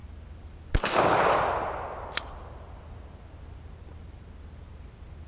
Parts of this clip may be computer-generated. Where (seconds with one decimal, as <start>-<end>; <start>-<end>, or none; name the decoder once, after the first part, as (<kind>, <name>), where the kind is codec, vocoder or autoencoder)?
none